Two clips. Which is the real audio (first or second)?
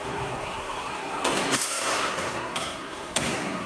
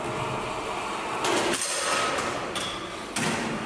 second